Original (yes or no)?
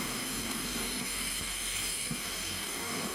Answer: no